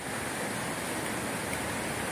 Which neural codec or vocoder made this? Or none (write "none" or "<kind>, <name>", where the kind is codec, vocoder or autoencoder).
none